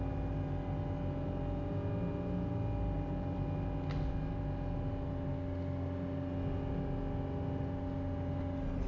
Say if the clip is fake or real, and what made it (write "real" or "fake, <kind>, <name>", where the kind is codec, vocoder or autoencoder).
real